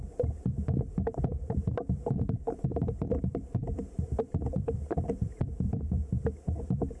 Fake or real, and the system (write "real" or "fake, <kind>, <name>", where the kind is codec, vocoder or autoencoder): fake, vocoder, BigVGAN v2